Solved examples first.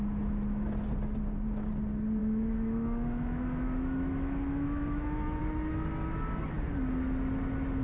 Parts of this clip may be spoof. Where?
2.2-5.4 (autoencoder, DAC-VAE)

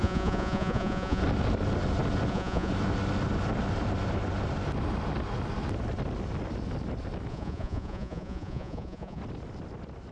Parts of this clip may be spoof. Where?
0.0-1.2 (vocoder, Vocos); 2.3-2.7; 7.3-9.2

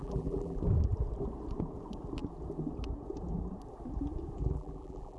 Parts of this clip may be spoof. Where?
0.0-0.6 (vocoder, BigVGAN v2); 4.4-5.2

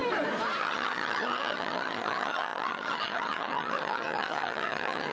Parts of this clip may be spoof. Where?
0.6-5.1 (vocoder, HiFi-GAN)